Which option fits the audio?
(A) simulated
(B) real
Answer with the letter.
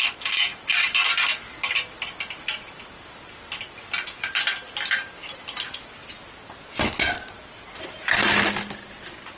B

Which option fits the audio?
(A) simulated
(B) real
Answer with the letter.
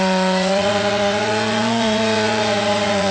A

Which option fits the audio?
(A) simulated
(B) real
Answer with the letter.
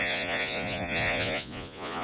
A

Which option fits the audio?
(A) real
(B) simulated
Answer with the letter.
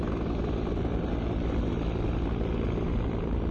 A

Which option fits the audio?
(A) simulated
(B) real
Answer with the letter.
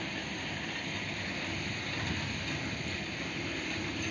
B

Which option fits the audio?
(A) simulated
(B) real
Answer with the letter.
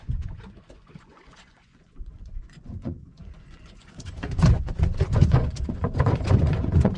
A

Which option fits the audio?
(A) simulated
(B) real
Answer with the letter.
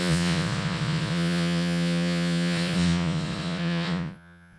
A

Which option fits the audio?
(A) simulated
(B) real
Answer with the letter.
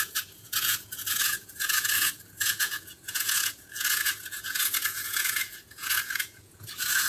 A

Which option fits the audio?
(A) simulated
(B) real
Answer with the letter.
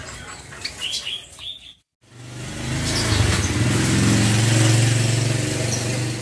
B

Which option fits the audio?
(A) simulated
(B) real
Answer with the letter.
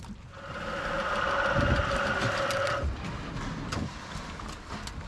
B